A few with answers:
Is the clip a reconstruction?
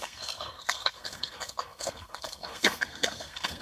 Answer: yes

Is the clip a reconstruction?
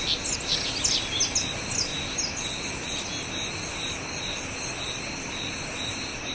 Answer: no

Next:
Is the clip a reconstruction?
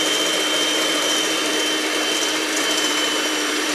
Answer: yes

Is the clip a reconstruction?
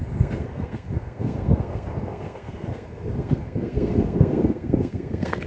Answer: yes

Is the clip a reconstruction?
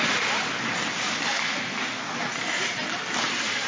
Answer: no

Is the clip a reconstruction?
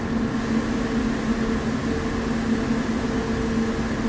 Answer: no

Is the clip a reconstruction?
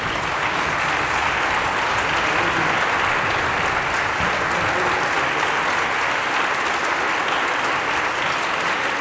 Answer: no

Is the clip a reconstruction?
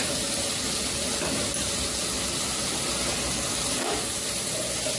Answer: no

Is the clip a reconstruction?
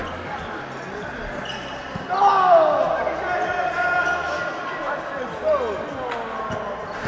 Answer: no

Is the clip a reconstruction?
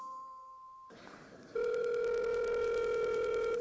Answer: yes